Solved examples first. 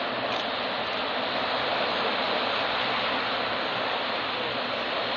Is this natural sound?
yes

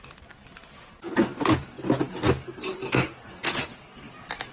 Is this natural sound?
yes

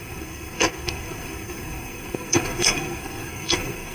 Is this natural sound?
no